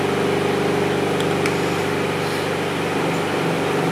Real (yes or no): yes